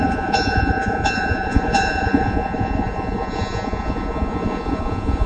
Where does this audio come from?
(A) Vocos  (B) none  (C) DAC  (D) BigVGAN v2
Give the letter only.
A